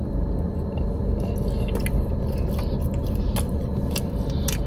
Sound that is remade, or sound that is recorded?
recorded